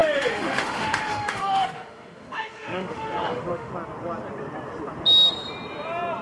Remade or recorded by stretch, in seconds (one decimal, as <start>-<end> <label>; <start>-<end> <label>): 0.0-3.7 remade; 3.7-6.2 recorded